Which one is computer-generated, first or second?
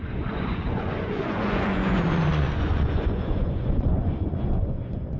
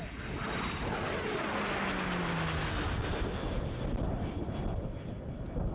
first